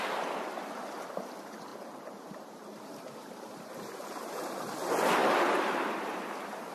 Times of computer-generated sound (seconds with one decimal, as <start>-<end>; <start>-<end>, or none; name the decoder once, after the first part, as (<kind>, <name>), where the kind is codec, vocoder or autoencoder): 1.7-4.6 (vocoder, BigVGAN v2); 5.2-6.7